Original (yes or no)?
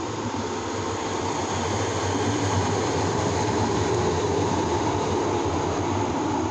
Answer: no